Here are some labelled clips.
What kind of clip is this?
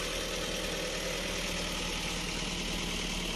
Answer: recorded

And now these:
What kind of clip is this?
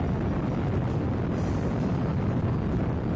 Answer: recorded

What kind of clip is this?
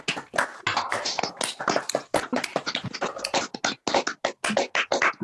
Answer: recorded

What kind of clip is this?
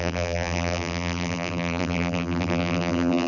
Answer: remade